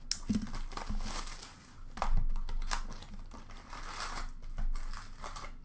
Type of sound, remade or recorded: recorded